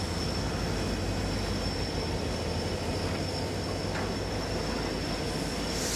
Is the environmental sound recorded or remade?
recorded